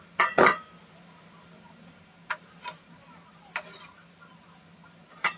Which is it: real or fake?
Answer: real